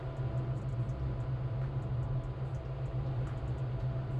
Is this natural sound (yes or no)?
yes